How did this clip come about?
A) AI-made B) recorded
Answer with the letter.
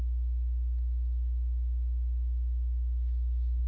B